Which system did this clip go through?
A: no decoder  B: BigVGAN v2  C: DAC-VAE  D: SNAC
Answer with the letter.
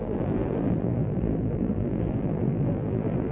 B